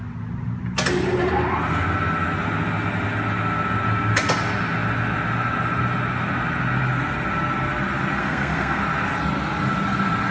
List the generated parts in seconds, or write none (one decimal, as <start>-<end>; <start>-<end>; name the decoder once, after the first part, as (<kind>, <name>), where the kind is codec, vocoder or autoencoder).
8.2-8.8 (codec, SNAC)